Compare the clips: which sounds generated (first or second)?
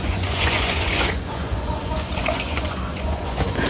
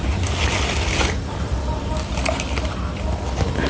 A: first